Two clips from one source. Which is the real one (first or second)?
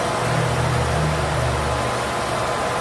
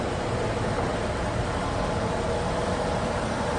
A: first